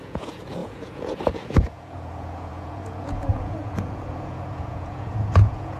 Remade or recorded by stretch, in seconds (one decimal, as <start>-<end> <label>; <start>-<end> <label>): 0.0-5.8 remade